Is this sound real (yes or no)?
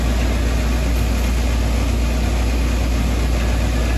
yes